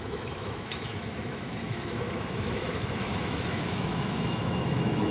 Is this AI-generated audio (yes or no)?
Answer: yes